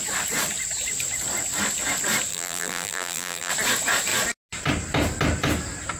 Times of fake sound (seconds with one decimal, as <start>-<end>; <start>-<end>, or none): 2.3-3.5